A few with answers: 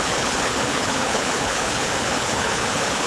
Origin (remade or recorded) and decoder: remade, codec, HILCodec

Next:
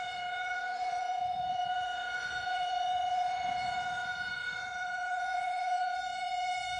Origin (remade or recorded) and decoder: remade, vocoder, Vocos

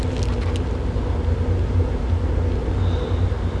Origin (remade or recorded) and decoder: recorded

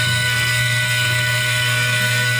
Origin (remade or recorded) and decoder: remade, codec, SNAC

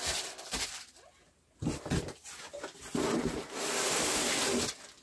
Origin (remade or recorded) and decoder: recorded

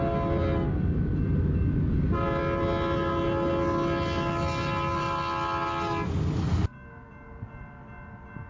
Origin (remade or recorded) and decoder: recorded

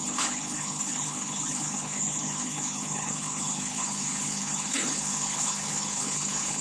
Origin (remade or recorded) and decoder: remade, codec, HILCodec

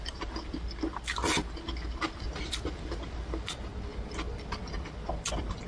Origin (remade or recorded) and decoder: recorded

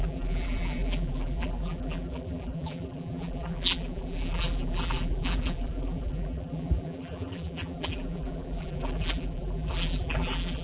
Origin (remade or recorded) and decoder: remade, vocoder, BigVGAN v2